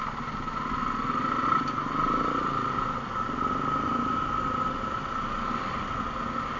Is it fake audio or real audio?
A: real